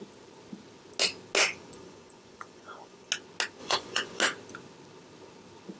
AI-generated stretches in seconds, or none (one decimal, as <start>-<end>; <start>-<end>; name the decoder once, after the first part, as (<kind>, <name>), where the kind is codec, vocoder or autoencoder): 1.4-3.1 (vocoder, Vocos); 3.6-4.2